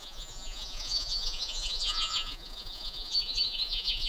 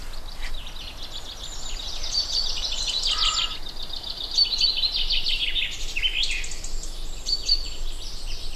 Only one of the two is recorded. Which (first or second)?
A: second